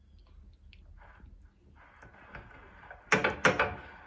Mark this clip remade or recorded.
recorded